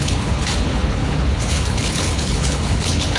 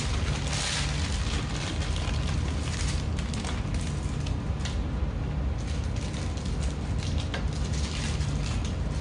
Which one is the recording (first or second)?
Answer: second